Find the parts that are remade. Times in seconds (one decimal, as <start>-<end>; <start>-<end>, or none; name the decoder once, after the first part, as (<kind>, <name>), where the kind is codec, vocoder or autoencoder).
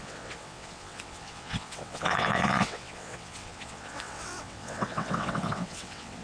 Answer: 0.0-6.2 (vocoder, WaveNeXt)